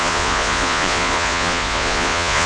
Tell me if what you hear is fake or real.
fake